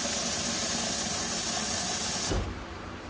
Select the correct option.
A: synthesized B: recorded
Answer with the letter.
B